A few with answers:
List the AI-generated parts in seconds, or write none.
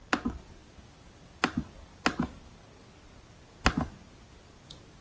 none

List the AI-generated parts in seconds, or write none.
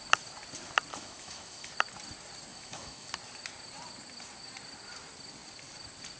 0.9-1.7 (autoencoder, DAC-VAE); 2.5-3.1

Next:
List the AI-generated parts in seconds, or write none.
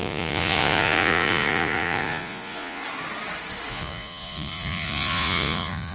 0.0-2.8 (vocoder, Vocos); 3.7-5.9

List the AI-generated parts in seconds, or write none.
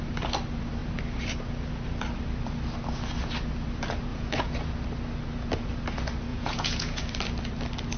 4.1-4.7 (vocoder, Vocos); 6.3-7.0